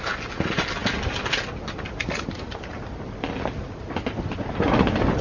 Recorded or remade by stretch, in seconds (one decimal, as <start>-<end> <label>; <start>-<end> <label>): 0.0-5.2 recorded